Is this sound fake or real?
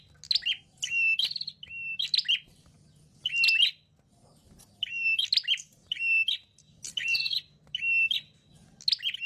real